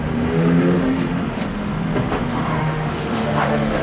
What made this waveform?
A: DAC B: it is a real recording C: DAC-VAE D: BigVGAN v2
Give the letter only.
C